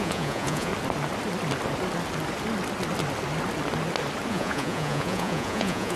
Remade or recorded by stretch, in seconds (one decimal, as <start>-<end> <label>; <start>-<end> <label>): 0.0-0.7 remade; 0.7-4.3 recorded; 4.3-6.0 remade

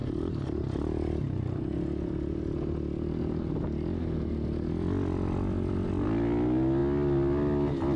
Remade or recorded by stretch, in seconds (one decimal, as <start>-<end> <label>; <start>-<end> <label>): 0.0-8.0 recorded

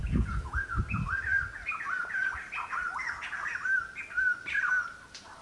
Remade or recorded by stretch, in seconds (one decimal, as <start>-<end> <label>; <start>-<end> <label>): 0.0-0.8 remade; 0.8-5.4 recorded

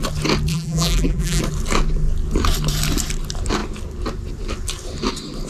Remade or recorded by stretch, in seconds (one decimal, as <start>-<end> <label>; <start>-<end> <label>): 0.0-0.5 recorded; 0.5-1.4 remade; 1.4-5.5 recorded

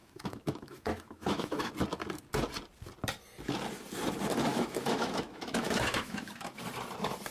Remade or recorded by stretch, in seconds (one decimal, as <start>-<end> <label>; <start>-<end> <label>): 0.0-1.7 remade; 1.7-4.5 recorded; 4.5-6.6 remade; 6.6-7.3 recorded